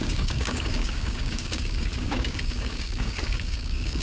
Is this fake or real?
fake